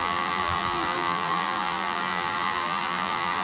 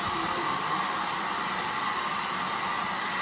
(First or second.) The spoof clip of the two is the first